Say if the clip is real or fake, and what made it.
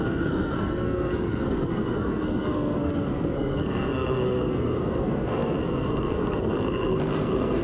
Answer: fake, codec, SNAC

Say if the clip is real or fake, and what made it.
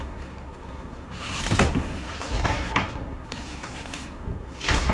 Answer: fake, codec, SNAC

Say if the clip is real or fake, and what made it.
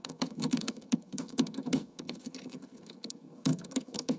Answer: fake, codec, SNAC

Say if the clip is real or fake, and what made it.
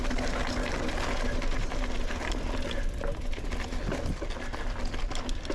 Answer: real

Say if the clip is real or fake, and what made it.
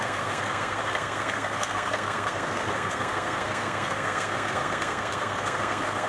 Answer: fake, codec, SNAC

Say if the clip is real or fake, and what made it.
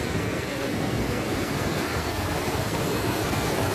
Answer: fake, codec, SNAC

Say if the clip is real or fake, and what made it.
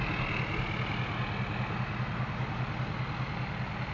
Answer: real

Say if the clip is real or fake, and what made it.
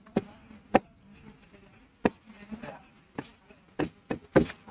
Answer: real